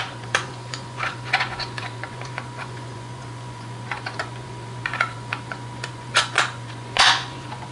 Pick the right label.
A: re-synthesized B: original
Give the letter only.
A